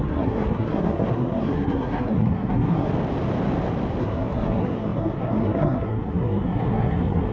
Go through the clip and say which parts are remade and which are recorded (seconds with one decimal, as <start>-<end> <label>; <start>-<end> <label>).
0.0-2.9 remade; 2.9-4.0 recorded; 4.0-7.3 remade

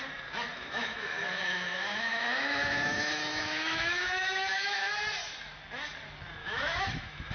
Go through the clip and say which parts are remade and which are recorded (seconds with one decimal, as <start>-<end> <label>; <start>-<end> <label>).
0.0-0.5 recorded; 0.5-4.9 remade; 4.9-6.4 recorded; 6.4-7.3 remade

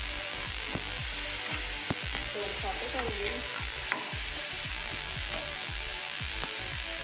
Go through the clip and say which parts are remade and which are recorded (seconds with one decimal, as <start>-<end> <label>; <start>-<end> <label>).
0.0-1.0 remade; 1.0-1.9 recorded; 1.9-2.5 remade; 2.5-3.1 recorded; 3.1-3.8 remade; 3.8-4.7 recorded; 4.7-7.0 remade

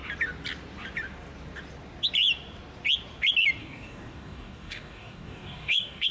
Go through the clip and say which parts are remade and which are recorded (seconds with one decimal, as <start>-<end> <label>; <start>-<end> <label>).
0.0-3.6 recorded; 3.6-6.1 remade

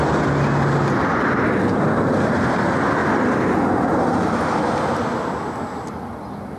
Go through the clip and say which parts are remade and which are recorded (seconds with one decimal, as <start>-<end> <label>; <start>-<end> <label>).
0.0-6.6 recorded

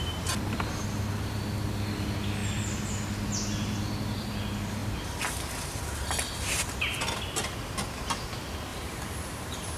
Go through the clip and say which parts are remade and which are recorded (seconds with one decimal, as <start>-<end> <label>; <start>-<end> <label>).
0.0-8.7 recorded; 8.7-9.8 remade